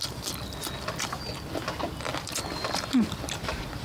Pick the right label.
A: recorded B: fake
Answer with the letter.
A